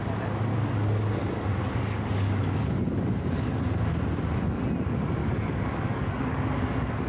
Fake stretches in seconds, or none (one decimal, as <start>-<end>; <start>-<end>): 0.5-3.8; 5.2-7.1